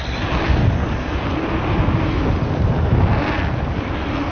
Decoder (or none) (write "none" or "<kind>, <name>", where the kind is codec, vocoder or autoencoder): none